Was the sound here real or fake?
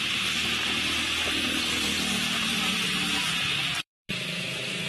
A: fake